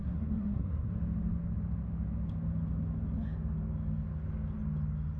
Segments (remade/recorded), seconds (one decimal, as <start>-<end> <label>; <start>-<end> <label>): 0.0-0.9 remade; 0.9-5.2 recorded